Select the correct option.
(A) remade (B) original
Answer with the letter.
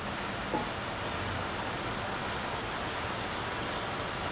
B